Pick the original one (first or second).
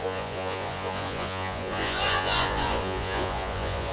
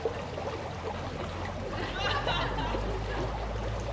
second